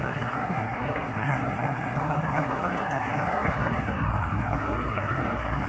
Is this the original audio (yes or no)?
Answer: no